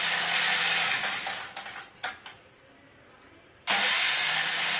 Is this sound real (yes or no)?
no